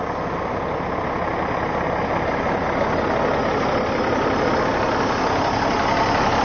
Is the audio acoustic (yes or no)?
yes